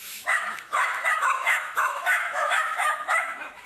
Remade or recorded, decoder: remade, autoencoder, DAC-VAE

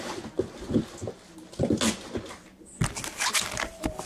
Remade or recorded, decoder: recorded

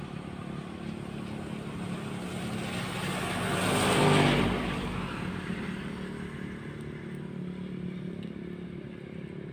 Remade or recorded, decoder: recorded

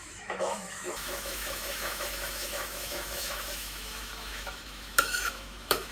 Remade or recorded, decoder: remade, autoencoder, DAC-VAE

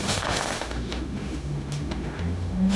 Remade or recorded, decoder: remade, autoencoder, DAC-VAE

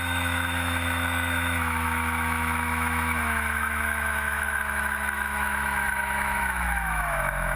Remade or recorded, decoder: remade, autoencoder, DAC-VAE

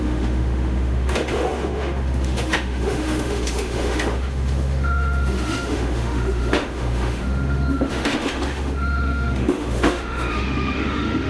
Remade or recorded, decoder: remade, autoencoder, DAC-VAE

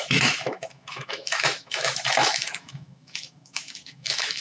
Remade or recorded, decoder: remade, autoencoder, DAC-VAE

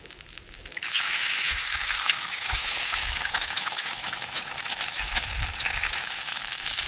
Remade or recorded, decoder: remade, autoencoder, DAC-VAE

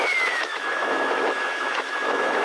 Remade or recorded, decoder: remade, autoencoder, DAC-VAE